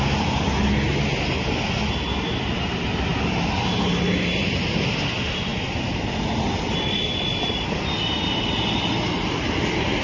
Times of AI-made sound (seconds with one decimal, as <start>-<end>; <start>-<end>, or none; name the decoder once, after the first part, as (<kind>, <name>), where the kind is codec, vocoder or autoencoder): none

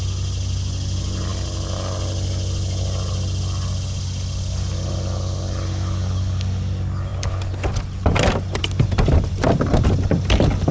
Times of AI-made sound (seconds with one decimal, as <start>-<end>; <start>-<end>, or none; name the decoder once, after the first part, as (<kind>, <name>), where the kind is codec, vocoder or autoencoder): none

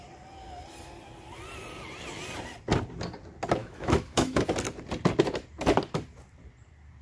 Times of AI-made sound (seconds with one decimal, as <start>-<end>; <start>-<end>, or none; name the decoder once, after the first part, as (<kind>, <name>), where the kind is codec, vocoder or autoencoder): 3.6-4.4 (autoencoder, DAC-VAE)

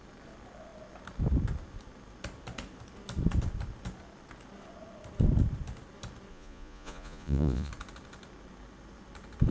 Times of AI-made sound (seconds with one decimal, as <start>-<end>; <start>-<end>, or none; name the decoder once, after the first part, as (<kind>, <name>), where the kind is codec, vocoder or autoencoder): 6.3-7.7 (vocoder, Vocos)

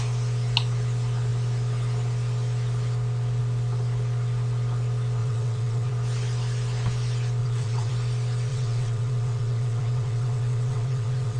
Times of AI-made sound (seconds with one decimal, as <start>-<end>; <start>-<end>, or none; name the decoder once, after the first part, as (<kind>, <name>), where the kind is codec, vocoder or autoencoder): 5.2-5.9 (vocoder, WaveNeXt); 7.4-7.9; 8.5-11.4

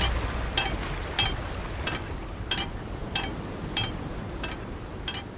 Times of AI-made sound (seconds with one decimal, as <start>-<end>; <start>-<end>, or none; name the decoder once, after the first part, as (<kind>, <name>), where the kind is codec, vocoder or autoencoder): none